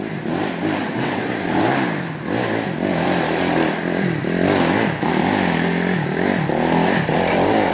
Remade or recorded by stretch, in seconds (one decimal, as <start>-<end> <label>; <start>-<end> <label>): 0.0-0.8 recorded; 0.8-1.3 remade; 1.3-7.7 recorded

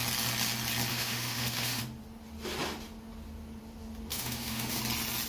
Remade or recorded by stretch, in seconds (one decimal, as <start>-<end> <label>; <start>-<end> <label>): 0.0-0.9 recorded; 0.9-1.8 remade; 1.8-4.1 recorded; 4.1-4.8 remade; 4.8-5.3 recorded

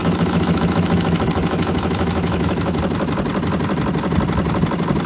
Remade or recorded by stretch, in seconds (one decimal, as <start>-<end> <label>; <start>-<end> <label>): 0.0-2.8 remade; 2.8-5.1 recorded

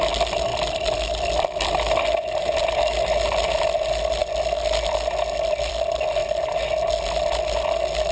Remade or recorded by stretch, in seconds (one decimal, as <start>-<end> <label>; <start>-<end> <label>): 0.0-8.1 recorded